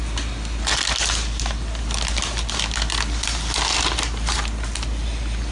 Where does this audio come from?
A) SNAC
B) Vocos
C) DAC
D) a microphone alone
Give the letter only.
D